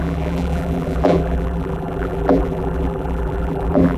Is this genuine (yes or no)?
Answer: no